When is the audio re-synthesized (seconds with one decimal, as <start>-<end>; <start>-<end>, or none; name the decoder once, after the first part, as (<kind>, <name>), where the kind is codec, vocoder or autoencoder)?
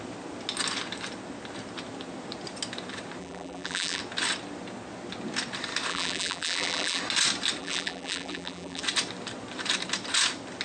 3.2-4.0 (vocoder, BigVGAN v2); 5.9-7.0; 7.6-8.8